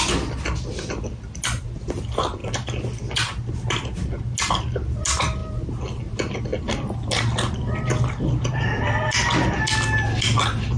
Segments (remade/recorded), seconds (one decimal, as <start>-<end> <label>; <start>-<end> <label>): 0.0-10.8 recorded